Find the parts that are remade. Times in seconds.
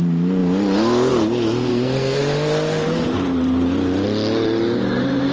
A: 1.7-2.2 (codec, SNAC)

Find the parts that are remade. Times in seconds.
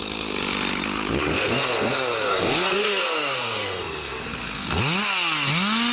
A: 1.3-4.8 (codec, SNAC)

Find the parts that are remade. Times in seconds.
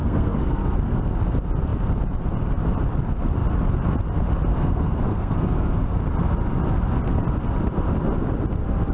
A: 0.0-1.0 (codec, SNAC); 4.5-6.0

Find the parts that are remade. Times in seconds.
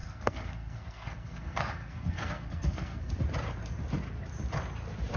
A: 0.0-3.1 (codec, SNAC)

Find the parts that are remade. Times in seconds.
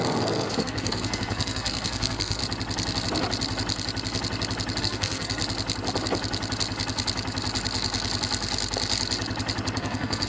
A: 0.0-2.4 (codec, SNAC); 4.8-5.4; 9.8-10.3